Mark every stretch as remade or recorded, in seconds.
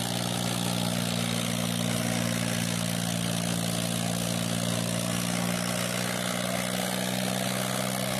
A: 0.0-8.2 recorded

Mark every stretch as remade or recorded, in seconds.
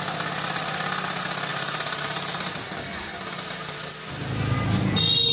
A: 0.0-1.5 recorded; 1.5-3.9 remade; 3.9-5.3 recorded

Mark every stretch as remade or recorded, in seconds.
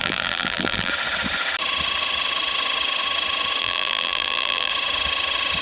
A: 0.0-0.9 remade; 0.9-3.6 recorded; 3.6-4.7 remade; 4.7-5.6 recorded